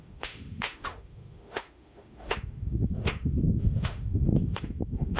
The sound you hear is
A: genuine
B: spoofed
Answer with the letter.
B